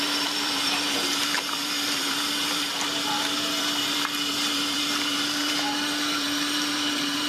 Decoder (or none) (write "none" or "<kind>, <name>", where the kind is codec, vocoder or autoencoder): vocoder, BigVGAN v2